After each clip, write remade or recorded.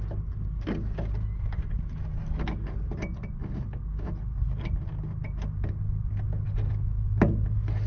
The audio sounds recorded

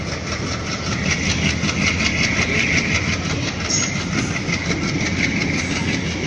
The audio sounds recorded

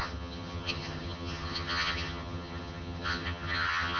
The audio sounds remade